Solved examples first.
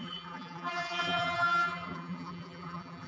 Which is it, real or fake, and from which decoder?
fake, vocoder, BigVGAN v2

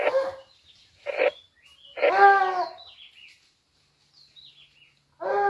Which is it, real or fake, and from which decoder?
real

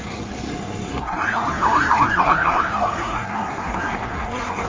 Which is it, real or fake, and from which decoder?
fake, codec, SNAC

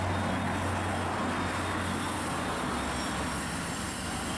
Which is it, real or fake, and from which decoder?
real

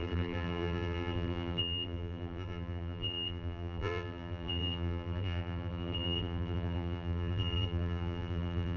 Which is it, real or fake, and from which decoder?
fake, vocoder, BigVGAN v2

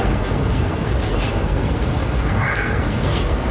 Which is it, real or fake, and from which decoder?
fake, codec, SNAC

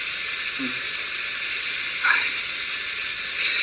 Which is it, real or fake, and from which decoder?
real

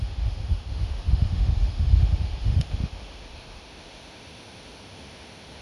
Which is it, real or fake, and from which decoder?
fake, autoencoder, DAC-VAE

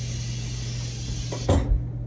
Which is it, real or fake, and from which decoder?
real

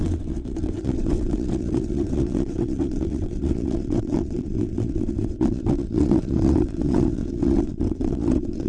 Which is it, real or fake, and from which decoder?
fake, vocoder, WaveNeXt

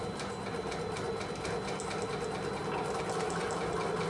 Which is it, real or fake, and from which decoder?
real